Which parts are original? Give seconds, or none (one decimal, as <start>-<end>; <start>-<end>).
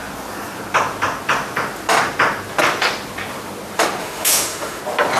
0.0-4.0; 4.8-5.2